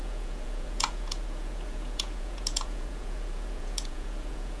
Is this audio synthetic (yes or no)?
yes